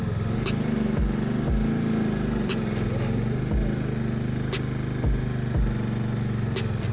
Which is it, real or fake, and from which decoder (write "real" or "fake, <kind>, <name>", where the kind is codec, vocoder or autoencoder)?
real